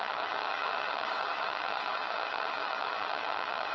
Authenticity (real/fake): fake